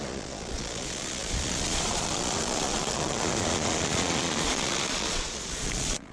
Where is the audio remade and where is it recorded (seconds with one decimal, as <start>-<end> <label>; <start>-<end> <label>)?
0.0-6.1 remade

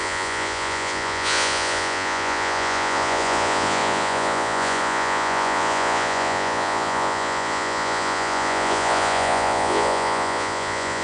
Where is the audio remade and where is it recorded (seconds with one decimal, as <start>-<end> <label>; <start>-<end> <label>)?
0.0-11.0 remade